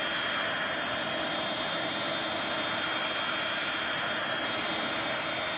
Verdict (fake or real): real